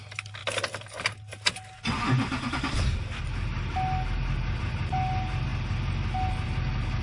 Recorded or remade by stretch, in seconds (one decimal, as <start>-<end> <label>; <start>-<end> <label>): 0.0-7.0 recorded